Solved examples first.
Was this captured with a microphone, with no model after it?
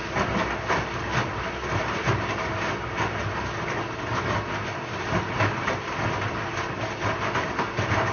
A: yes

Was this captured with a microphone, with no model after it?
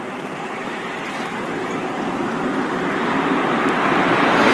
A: no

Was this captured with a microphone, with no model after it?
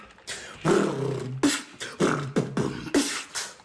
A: yes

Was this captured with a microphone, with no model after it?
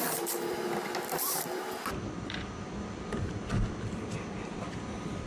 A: no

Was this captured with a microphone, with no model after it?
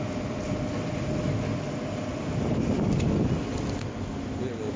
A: yes